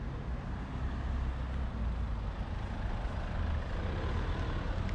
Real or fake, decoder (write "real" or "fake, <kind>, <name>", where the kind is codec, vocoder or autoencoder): real